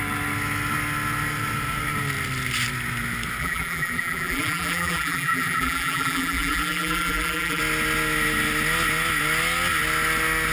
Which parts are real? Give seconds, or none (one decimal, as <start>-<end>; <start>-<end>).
0.0-3.4; 7.6-10.5